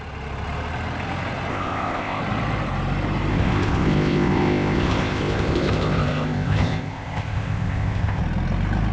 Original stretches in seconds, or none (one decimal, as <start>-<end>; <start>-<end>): 0.0-1.5; 2.2-3.3; 8.2-8.9